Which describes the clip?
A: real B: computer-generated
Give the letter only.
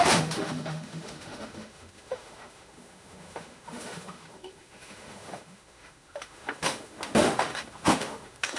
B